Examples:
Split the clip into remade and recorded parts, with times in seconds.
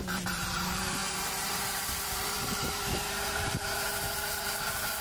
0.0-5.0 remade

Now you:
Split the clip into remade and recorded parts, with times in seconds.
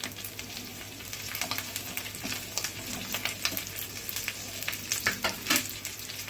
0.0-6.3 recorded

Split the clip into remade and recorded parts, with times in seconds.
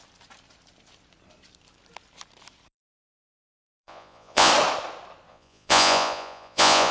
0.0-3.4 recorded; 3.4-4.5 remade; 4.5-5.3 recorded; 5.3-6.9 remade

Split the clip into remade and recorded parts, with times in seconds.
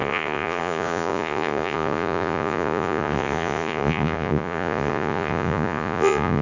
0.0-6.4 remade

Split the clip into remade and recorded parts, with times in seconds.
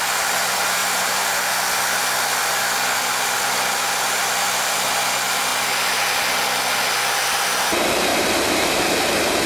0.0-8.1 recorded; 8.1-9.0 remade; 9.0-9.5 recorded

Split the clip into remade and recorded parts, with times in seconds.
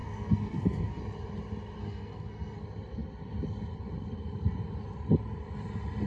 0.0-1.0 remade; 1.0-1.8 recorded; 1.8-2.6 remade; 2.6-6.1 recorded